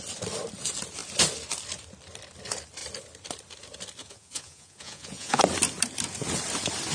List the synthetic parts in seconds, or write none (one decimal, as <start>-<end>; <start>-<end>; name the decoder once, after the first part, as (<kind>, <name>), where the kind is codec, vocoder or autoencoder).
4.0-5.4 (vocoder, Vocos)